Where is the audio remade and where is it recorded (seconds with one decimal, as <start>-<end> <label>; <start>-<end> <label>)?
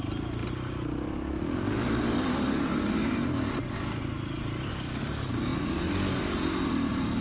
0.0-7.2 recorded